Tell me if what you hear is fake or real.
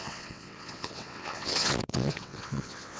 fake